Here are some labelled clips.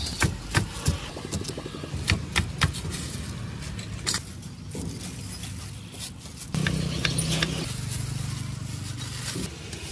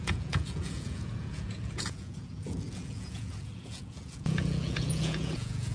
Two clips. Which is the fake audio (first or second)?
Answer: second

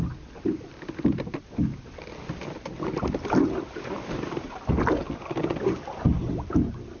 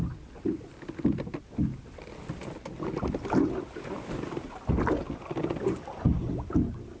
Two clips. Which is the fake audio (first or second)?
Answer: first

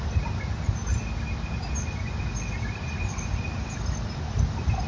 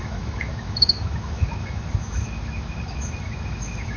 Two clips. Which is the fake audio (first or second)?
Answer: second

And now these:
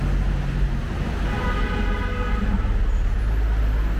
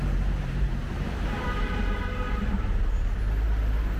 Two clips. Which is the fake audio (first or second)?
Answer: second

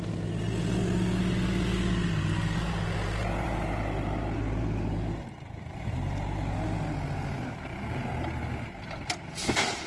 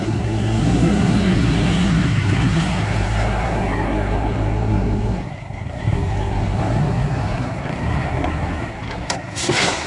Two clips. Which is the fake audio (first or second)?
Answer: second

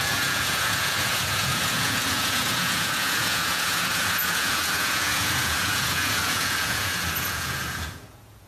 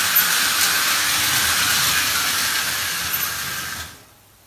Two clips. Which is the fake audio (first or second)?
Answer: first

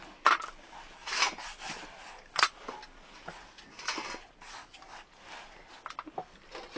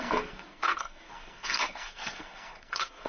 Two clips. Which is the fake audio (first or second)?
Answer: second